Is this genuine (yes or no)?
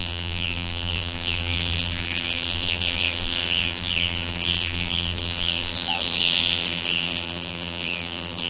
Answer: no